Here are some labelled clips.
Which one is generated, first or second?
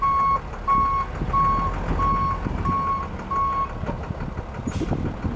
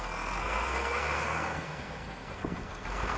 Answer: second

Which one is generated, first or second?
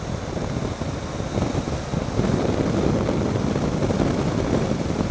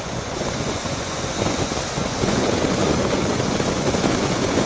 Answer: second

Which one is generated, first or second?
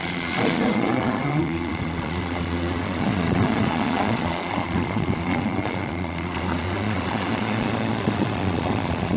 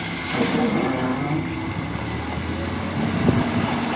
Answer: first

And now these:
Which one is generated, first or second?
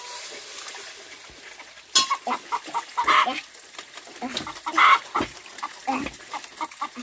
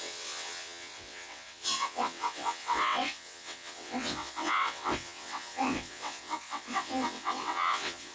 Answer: second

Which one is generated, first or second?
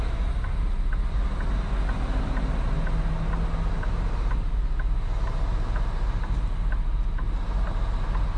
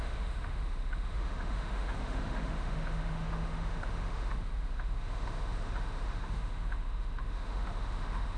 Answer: second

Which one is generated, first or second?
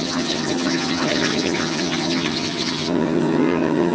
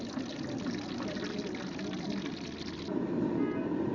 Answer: first